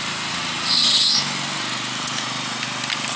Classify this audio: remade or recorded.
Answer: recorded